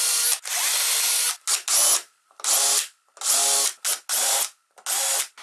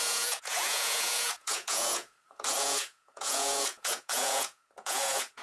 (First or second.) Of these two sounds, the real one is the first